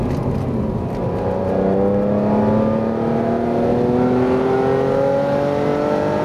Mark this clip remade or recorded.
recorded